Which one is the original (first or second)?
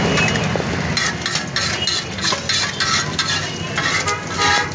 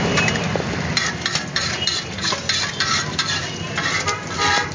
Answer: first